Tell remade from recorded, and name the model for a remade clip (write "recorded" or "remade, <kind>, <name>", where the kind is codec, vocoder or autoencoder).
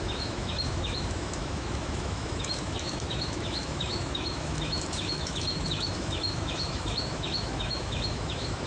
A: remade, autoencoder, DAC-VAE